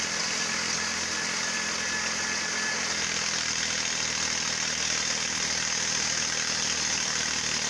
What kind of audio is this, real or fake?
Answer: real